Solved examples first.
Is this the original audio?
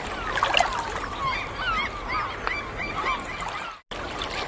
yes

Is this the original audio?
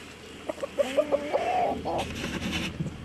yes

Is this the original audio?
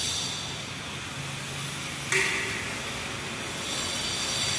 yes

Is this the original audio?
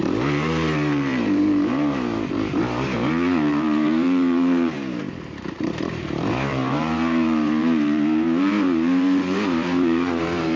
no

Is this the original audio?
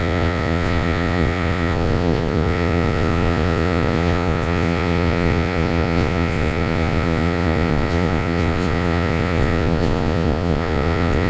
no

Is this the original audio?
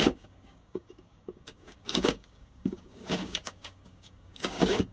no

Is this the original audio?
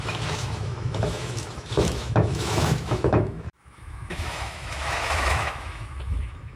no